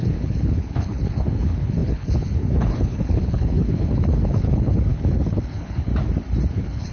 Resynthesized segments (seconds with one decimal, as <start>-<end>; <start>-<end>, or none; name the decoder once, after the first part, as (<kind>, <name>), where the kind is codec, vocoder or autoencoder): 0.0-5.9 (codec, HILCodec); 6.5-6.9